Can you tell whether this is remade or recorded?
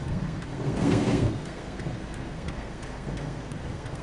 remade